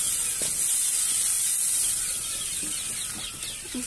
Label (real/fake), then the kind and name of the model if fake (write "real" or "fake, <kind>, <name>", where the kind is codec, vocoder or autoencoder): real